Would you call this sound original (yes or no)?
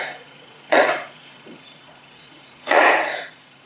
no